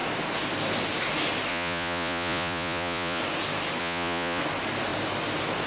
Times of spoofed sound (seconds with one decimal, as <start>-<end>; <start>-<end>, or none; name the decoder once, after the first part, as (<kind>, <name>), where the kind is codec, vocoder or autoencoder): 1.5-3.2 (vocoder, Vocos); 3.8-4.4